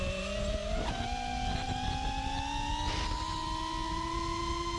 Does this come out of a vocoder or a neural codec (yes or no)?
no